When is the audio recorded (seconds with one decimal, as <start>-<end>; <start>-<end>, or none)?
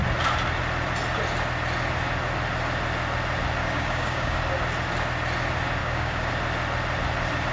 0.0-3.6; 4.4-5.8; 6.3-7.5